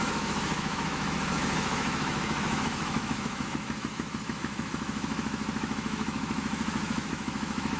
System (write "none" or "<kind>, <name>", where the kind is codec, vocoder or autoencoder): autoencoder, DAC-VAE